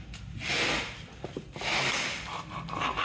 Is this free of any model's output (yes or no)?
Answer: yes